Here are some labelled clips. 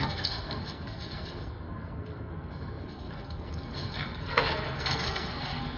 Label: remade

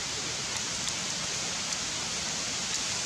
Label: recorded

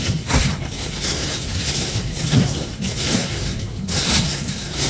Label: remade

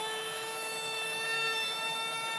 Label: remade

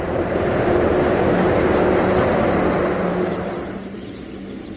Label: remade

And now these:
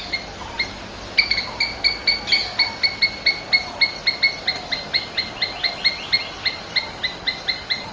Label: recorded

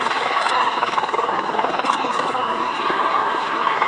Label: remade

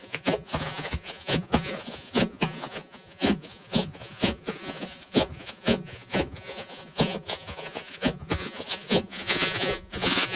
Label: remade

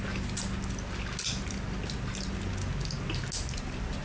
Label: recorded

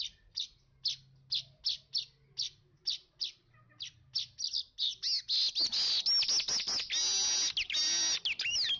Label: recorded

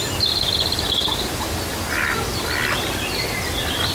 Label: recorded